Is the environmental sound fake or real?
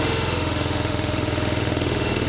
fake